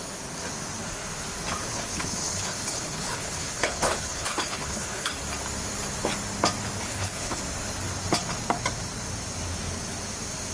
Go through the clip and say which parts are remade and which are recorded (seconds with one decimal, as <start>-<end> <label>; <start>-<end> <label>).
0.0-1.7 recorded; 1.7-5.1 remade; 5.1-6.8 recorded; 6.8-7.4 remade; 7.4-10.5 recorded